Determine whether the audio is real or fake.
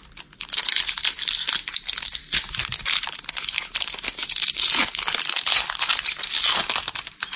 real